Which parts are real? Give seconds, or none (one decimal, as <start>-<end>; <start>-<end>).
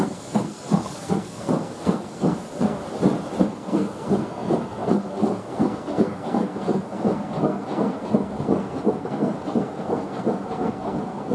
2.8-3.4